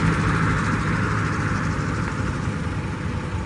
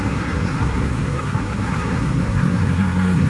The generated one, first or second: second